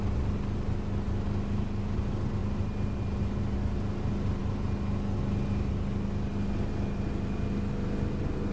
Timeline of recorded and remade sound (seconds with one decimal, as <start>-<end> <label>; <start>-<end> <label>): 0.0-8.5 recorded